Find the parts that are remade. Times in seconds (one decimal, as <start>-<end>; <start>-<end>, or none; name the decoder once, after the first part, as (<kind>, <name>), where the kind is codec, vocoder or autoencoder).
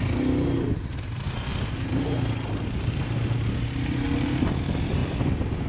none